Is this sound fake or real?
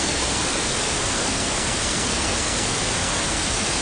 fake